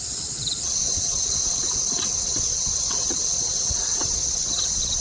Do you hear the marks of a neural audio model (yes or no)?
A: yes